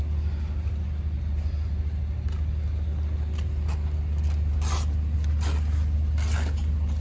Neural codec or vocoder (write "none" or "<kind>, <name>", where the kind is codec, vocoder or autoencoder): none